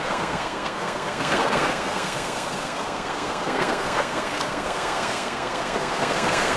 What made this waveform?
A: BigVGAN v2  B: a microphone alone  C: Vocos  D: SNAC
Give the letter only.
D